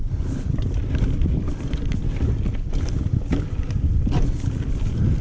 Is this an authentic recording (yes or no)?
yes